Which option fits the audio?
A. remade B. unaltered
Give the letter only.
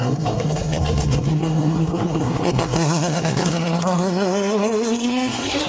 A